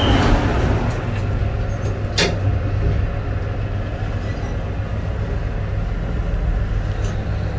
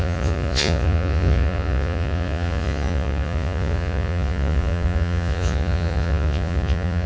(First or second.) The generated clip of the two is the second